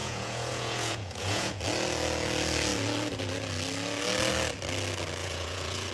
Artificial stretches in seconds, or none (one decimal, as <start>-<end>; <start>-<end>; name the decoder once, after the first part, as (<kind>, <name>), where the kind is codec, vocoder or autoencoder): 0.0-1.6 (vocoder, Vocos); 5.2-5.9